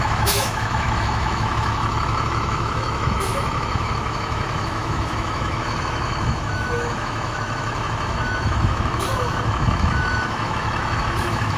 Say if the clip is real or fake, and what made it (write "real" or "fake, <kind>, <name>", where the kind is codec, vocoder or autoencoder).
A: fake, autoencoder, DAC-VAE